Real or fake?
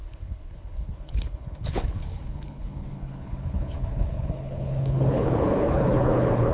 fake